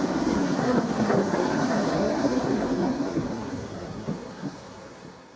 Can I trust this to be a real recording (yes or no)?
no